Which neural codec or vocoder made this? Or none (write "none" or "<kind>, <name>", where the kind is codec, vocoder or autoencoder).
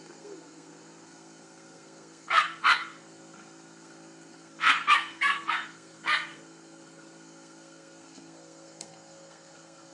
codec, SNAC